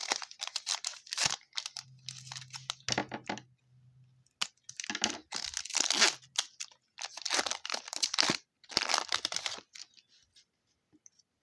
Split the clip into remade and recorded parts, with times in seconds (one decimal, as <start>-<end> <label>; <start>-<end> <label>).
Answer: 0.0-6.5 recorded; 6.5-9.4 remade; 9.4-11.4 recorded